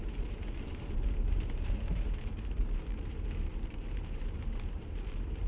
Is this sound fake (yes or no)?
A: yes